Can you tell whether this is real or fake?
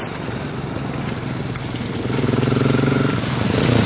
fake